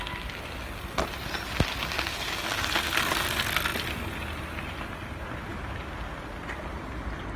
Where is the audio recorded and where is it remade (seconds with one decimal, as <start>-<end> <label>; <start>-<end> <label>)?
0.0-7.4 recorded